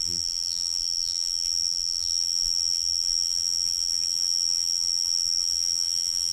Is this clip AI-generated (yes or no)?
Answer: yes